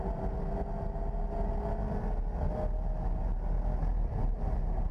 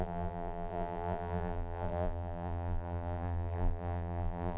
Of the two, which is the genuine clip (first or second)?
first